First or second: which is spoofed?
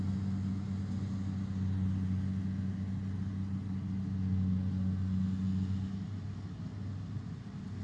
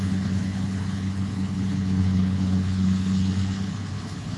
second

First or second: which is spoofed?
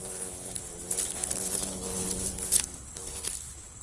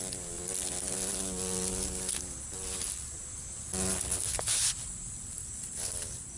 first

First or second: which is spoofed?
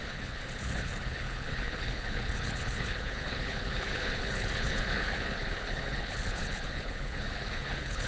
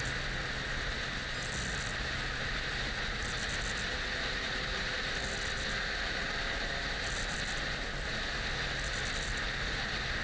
first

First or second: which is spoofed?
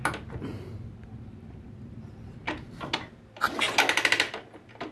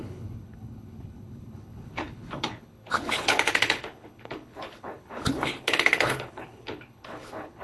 second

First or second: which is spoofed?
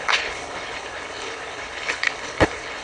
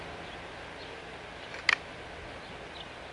first